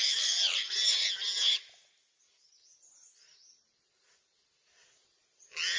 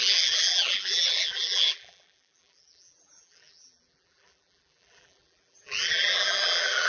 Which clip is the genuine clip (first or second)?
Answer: first